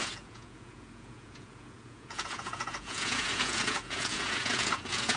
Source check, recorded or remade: remade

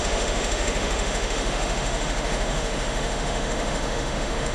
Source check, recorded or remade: remade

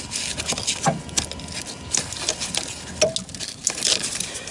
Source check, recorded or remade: recorded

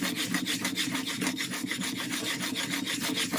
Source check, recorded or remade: recorded